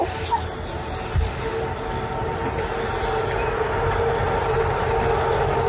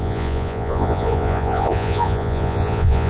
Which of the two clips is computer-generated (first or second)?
second